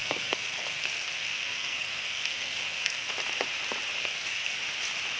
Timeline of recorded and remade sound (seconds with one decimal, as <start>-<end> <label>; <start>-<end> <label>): 0.0-3.1 remade; 3.1-4.0 recorded; 4.0-4.6 remade; 4.6-5.2 recorded

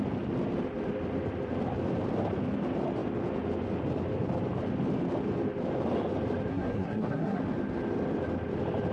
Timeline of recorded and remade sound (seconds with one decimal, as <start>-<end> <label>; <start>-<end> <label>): 0.0-6.5 recorded; 6.5-7.4 remade; 7.4-8.9 recorded

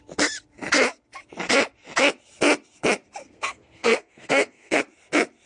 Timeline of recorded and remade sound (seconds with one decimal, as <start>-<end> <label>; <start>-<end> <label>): 0.0-3.2 recorded; 3.2-4.8 remade; 4.8-5.5 recorded

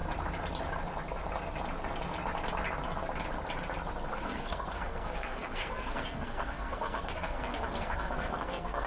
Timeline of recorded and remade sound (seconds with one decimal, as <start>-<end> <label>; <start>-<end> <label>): 0.0-4.1 recorded; 4.1-8.9 remade

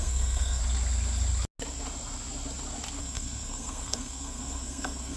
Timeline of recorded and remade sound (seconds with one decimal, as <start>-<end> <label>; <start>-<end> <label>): 0.0-0.6 remade; 0.6-3.0 recorded; 3.0-5.2 remade